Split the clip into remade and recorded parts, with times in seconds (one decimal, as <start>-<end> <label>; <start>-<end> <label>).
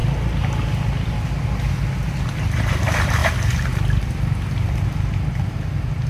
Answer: 0.0-6.1 recorded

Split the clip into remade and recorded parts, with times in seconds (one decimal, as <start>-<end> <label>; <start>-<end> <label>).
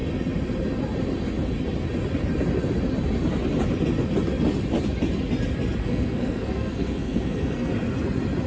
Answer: 0.0-5.8 recorded; 5.8-7.7 remade; 7.7-8.5 recorded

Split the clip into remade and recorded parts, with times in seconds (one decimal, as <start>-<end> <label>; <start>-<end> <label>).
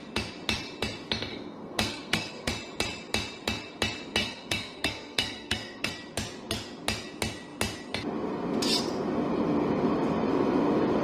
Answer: 0.0-1.3 recorded; 1.3-2.5 remade; 2.5-4.2 recorded; 4.2-5.9 remade; 5.9-11.0 recorded